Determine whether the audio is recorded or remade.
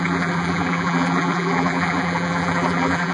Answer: remade